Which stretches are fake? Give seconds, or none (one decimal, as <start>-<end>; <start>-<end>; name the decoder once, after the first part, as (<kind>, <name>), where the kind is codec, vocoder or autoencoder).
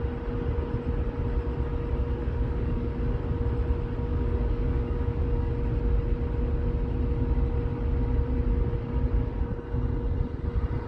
2.2-3.0 (codec, DAC); 4.1-5.5